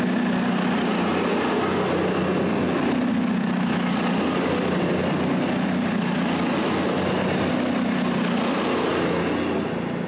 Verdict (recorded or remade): recorded